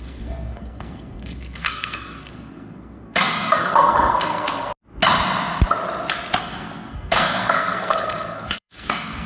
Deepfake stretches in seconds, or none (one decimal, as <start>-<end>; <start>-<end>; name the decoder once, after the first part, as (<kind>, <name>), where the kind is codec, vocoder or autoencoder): 0.0-4.7 (codec, SNAC); 6.4-9.3

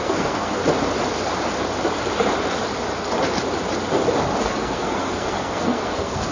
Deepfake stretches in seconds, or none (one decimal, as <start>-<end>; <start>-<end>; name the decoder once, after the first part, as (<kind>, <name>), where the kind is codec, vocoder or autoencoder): 0.0-0.6 (codec, SNAC); 4.4-6.3

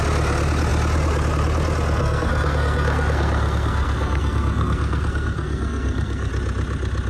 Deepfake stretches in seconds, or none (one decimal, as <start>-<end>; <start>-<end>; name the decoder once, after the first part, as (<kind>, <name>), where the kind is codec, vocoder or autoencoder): 2.0-6.3 (codec, SNAC)

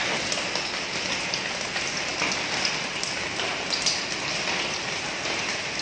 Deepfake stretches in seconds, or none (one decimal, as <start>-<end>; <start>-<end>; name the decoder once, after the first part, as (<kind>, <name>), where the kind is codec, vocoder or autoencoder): none

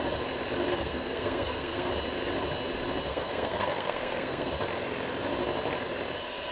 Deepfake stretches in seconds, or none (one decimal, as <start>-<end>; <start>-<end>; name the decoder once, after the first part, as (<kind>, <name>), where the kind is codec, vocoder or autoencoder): 0.7-1.9 (codec, SNAC); 3.1-4.5

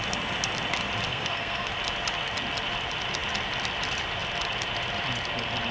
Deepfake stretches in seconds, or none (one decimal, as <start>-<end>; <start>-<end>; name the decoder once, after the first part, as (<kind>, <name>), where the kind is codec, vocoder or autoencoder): 1.1-1.7 (codec, SNAC)

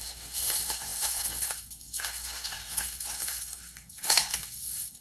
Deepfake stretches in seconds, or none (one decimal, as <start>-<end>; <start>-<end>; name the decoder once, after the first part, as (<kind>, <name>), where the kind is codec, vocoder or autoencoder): 0.0-5.0 (codec, SNAC)